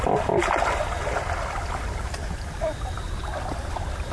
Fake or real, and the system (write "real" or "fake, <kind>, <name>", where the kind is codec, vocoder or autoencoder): fake, vocoder, BigVGAN v2